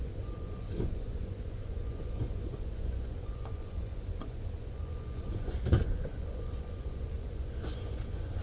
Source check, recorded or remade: remade